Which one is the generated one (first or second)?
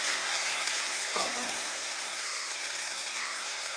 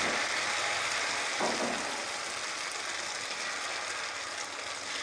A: first